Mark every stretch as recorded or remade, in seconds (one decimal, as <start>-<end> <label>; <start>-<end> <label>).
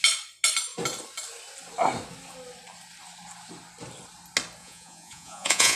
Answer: 0.0-4.6 recorded; 4.6-5.8 remade